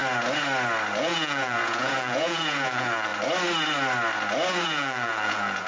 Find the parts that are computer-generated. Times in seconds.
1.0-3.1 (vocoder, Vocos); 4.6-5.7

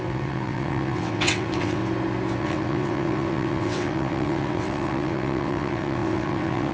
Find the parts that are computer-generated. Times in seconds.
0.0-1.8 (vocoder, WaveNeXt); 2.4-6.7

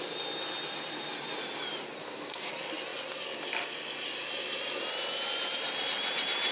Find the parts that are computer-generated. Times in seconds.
2.0-2.5 (codec, SNAC)